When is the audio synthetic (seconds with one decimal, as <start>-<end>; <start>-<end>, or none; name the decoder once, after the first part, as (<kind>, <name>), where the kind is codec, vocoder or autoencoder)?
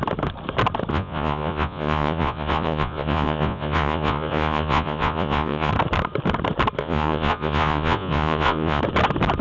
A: 0.9-5.7 (vocoder, Vocos); 6.8-8.8